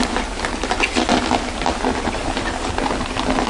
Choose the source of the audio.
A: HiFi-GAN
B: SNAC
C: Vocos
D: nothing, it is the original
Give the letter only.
D